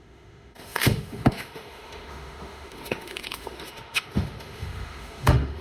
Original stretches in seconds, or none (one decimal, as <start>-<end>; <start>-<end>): none